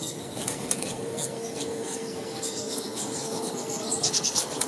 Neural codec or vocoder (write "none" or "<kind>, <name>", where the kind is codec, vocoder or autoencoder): codec, SNAC